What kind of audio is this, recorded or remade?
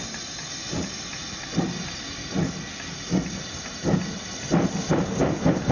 recorded